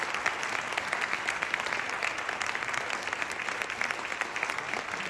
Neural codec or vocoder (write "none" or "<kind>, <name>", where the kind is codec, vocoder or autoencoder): none